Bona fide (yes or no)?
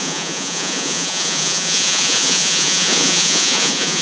no